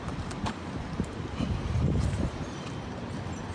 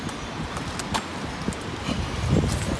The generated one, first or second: first